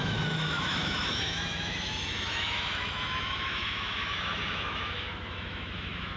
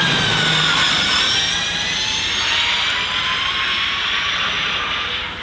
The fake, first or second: first